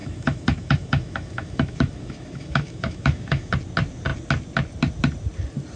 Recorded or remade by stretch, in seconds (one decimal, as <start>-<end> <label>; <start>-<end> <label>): 0.0-3.5 remade; 3.5-5.8 recorded